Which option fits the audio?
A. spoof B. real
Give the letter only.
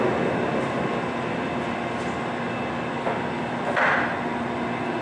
B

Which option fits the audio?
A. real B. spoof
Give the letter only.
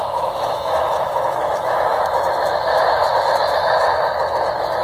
B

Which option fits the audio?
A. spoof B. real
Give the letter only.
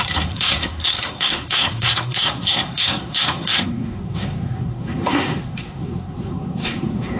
A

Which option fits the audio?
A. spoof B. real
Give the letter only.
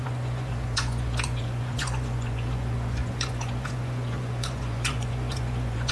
A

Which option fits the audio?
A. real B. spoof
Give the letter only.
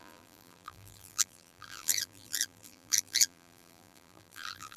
B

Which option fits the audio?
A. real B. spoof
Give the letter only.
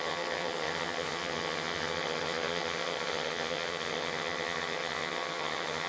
B